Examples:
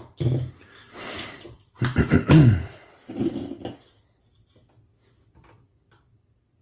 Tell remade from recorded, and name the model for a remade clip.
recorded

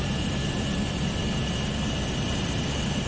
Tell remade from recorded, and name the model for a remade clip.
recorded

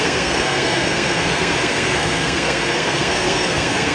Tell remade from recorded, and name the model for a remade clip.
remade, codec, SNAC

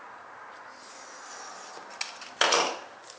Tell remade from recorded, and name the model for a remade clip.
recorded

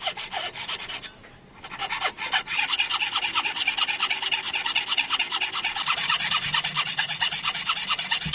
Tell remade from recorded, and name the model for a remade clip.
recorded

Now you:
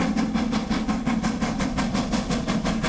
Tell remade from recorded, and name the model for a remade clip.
recorded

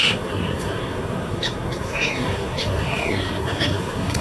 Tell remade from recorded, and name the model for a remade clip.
remade, codec, SNAC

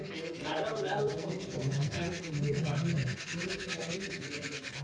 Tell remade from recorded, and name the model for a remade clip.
remade, codec, SNAC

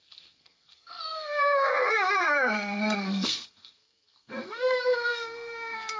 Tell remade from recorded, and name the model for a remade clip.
remade, codec, SNAC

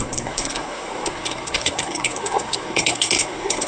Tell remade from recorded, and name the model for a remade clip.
remade, codec, SNAC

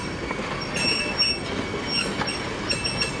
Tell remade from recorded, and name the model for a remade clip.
recorded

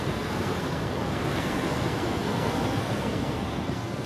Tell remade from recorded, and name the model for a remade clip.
remade, codec, SNAC